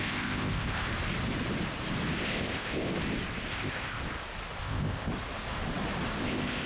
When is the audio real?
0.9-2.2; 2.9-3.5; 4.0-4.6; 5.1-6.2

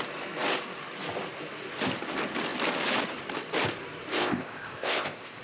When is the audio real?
0.0-4.1

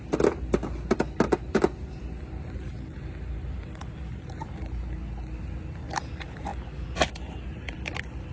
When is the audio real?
0.0-8.3

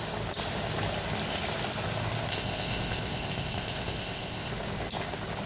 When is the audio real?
0.0-2.3; 4.5-5.5

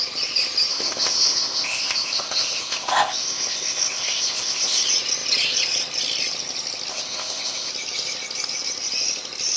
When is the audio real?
0.0-0.7; 4.8-6.9; 7.7-9.6

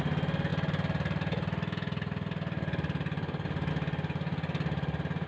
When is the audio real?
0.0-5.3